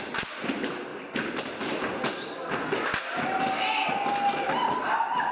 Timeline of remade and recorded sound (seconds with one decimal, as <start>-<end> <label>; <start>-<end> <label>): 0.0-5.3 recorded